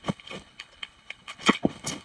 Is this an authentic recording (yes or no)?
no